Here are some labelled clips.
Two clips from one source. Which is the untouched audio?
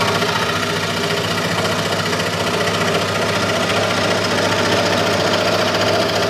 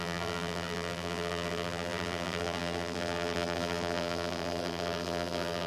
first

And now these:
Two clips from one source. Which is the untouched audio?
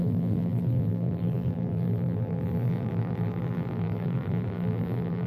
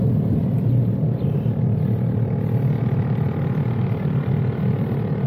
second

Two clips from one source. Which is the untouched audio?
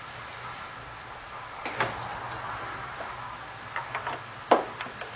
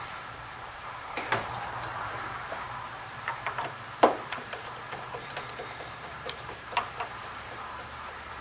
first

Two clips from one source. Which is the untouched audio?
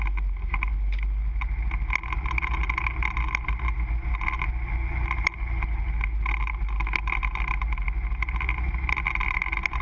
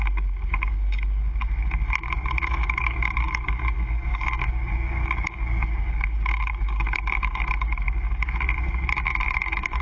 first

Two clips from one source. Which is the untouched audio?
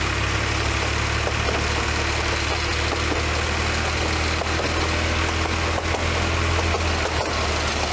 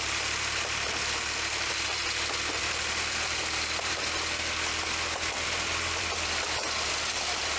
first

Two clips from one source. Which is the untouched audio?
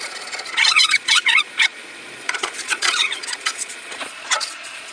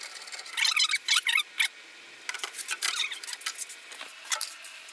second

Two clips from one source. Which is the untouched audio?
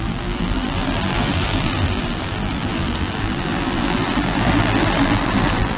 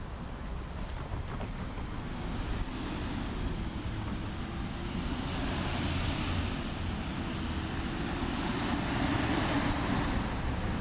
second